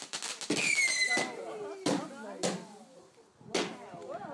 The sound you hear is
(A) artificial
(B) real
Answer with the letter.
B